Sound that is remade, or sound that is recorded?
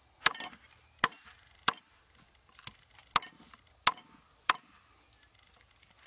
recorded